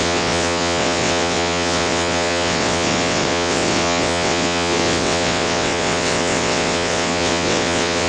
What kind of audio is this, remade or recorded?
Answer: remade